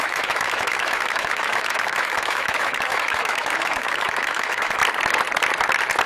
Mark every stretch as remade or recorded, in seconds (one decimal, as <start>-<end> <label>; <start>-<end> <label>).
0.0-4.8 remade; 4.8-6.1 recorded